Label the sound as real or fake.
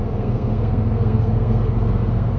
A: fake